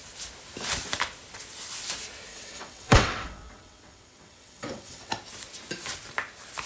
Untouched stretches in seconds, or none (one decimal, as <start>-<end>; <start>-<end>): 0.0-2.3; 5.1-6.7